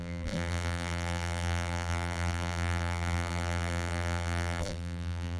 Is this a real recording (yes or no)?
no